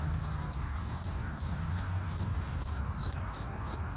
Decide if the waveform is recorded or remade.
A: remade